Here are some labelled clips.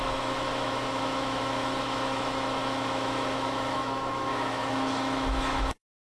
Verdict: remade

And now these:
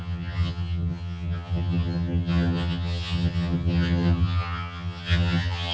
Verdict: remade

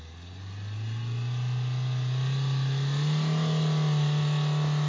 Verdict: recorded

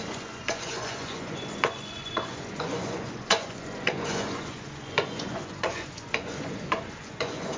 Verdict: remade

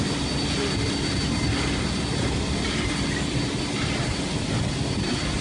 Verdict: recorded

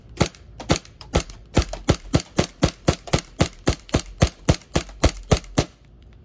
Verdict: remade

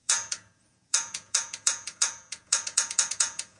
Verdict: remade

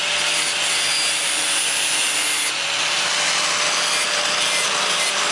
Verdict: recorded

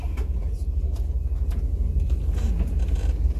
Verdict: recorded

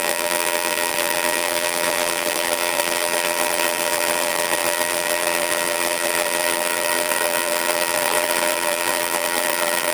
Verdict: remade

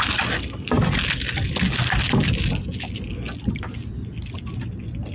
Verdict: recorded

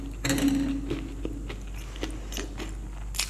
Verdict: recorded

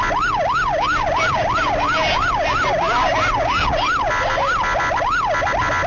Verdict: recorded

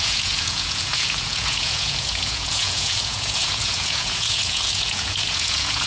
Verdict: remade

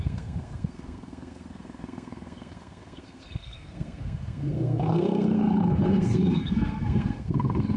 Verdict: remade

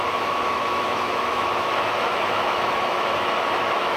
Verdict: remade